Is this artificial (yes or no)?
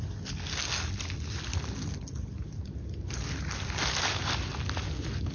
no